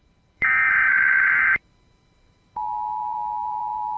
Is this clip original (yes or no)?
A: no